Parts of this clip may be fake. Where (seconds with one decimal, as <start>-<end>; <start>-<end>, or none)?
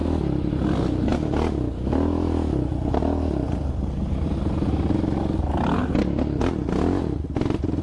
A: none